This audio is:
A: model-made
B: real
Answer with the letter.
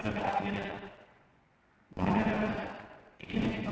A